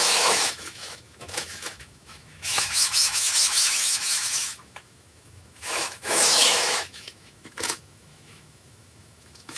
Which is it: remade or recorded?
remade